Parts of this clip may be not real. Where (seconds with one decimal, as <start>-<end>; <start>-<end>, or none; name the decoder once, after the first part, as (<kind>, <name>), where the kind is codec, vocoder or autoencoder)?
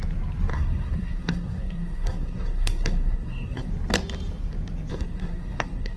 0.5-3.7 (codec, SNAC); 4.9-6.0